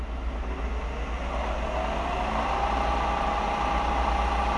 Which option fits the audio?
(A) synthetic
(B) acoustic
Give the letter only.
B